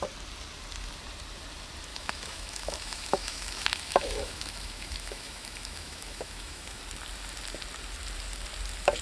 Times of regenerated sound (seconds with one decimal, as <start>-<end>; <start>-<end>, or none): 1.9-6.8